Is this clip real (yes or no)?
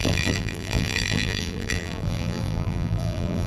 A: no